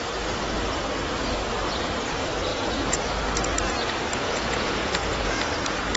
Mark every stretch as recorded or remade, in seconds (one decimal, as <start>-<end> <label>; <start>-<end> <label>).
0.0-2.5 recorded; 2.5-3.0 remade; 3.0-4.2 recorded; 4.2-5.4 remade; 5.4-6.0 recorded